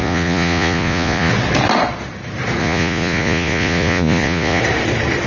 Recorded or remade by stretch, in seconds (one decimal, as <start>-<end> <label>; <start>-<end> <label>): 0.0-1.3 remade; 1.3-2.6 recorded; 2.6-4.6 remade; 4.6-5.3 recorded